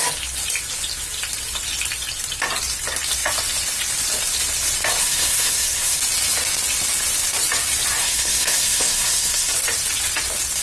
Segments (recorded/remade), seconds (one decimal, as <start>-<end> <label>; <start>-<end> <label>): 0.0-5.0 recorded; 5.0-6.0 remade; 6.0-8.0 recorded; 8.0-9.5 remade; 9.5-10.6 recorded